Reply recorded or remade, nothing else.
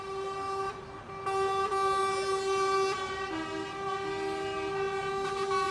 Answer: recorded